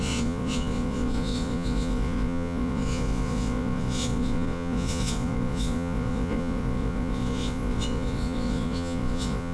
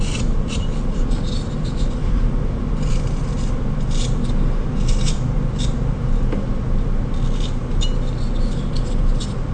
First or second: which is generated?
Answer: first